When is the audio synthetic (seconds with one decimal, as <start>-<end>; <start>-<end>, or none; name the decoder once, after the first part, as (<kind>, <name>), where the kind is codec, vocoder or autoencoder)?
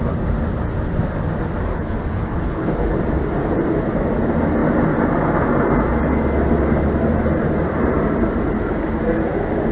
1.7-3.0 (codec, HILCodec)